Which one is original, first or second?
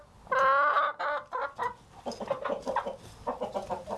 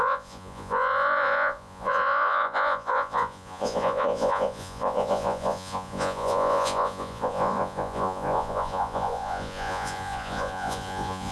first